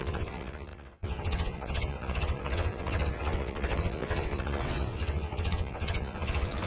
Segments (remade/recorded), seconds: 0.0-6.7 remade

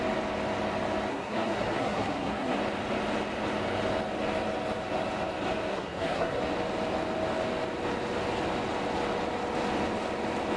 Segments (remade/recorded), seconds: 0.0-1.1 recorded; 1.1-2.6 remade; 2.6-5.7 recorded; 5.7-6.4 remade; 6.4-10.6 recorded